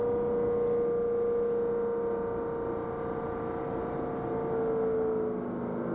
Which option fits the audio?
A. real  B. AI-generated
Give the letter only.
A